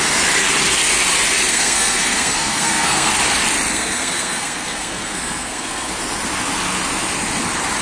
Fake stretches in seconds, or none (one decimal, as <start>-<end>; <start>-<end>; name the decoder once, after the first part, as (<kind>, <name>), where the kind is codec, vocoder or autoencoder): 1.5-3.1 (codec, SNAC); 3.7-5.9